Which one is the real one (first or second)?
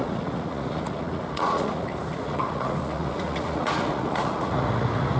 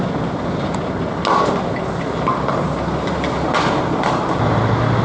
second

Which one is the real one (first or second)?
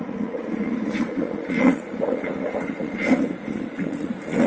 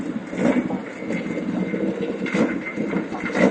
second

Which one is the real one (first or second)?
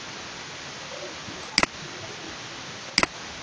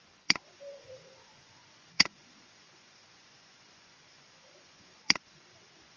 first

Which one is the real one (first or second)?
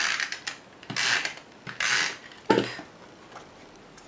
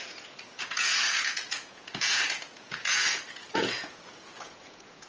first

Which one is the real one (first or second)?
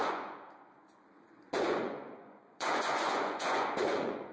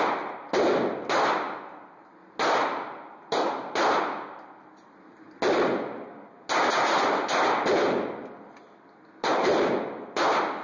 second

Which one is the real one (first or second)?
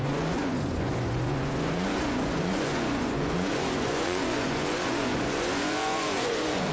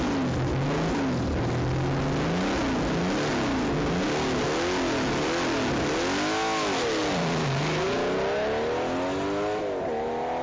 second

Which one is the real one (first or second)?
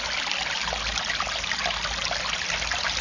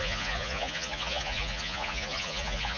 first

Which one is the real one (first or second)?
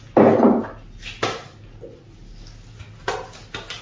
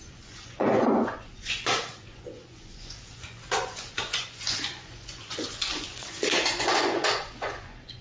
first